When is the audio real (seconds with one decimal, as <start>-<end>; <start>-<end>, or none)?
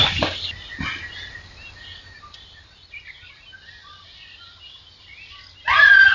0.0-6.1